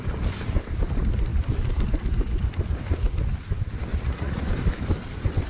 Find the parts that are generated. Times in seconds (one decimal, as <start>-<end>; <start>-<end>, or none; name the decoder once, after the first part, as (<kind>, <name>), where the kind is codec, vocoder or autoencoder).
3.9-4.4 (vocoder, Vocos)